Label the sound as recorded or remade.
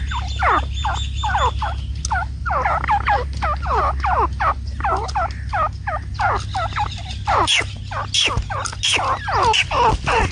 recorded